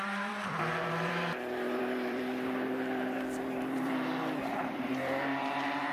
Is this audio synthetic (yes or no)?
yes